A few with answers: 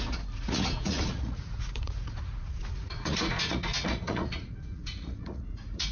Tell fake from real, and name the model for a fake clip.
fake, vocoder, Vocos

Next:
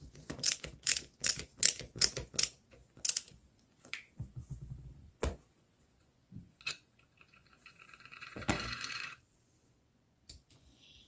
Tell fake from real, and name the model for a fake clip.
fake, vocoder, Vocos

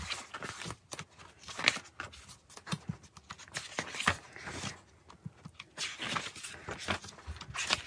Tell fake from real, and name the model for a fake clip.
real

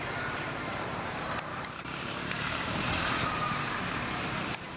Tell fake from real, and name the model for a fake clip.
fake, vocoder, BigVGAN v2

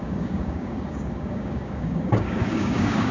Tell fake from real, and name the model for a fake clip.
fake, codec, DAC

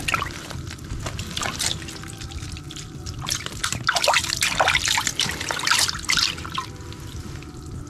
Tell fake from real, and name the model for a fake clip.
real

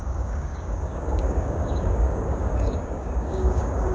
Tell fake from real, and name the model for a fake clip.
fake, codec, DAC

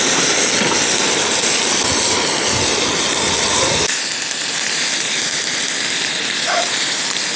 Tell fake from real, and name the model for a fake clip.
real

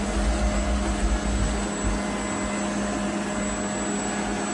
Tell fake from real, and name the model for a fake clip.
real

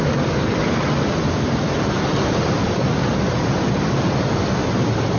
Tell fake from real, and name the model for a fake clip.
real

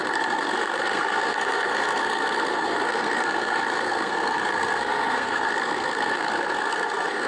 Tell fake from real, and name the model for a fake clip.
fake, codec, SNAC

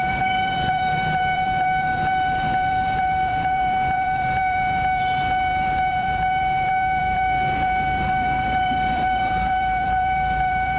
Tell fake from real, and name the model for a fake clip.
fake, vocoder, BigVGAN v2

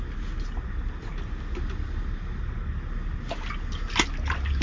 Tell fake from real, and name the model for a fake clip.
real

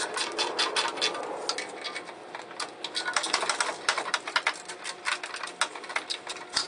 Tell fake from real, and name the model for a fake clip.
real